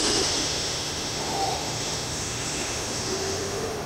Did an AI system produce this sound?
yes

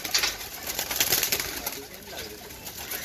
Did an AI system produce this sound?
no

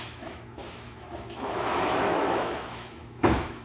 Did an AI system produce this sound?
yes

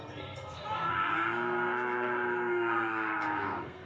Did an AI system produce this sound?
yes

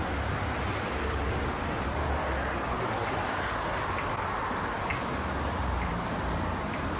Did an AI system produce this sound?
yes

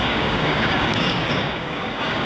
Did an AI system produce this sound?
yes